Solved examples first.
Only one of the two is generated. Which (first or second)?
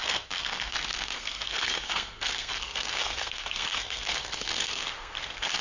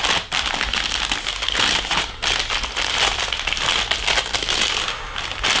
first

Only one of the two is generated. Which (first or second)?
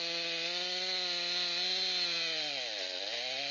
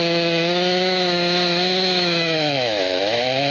second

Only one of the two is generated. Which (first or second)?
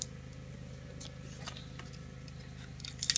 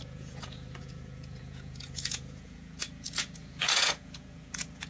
second